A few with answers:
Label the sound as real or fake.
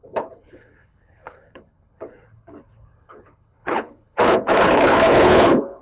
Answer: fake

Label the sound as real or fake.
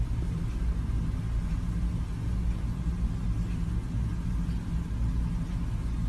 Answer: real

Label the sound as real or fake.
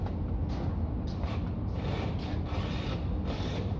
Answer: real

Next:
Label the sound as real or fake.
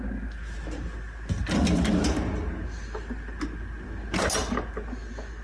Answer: real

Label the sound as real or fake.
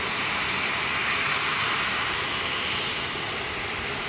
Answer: real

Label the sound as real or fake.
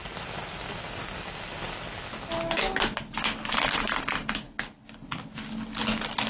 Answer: real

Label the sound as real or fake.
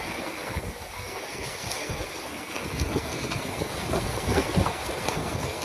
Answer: fake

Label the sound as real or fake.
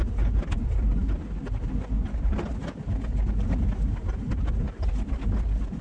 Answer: real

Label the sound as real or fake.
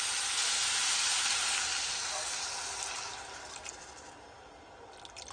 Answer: real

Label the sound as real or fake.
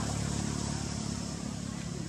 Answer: real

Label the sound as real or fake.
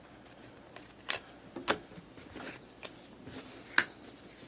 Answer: real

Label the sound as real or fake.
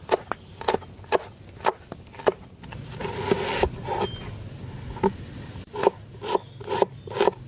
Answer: real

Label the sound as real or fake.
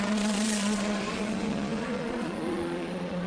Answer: fake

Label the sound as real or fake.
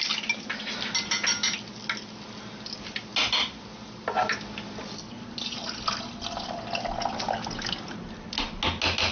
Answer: real